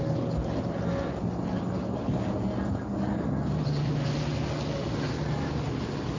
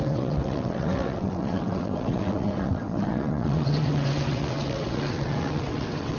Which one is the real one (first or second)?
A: first